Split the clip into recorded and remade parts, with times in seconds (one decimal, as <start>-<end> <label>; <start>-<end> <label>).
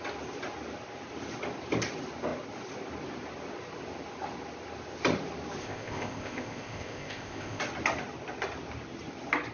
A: 0.0-5.6 recorded; 5.6-7.6 remade; 7.6-9.5 recorded